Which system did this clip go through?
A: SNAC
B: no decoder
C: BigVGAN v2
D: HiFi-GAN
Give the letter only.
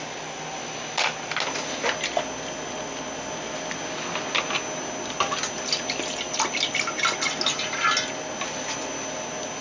B